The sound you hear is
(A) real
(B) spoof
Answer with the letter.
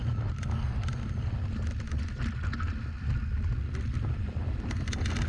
A